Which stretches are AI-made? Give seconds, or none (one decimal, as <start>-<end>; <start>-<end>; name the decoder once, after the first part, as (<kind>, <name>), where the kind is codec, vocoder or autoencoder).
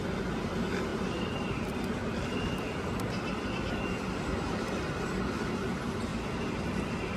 0.9-3.7 (vocoder, BigVGAN v2); 6.1-6.8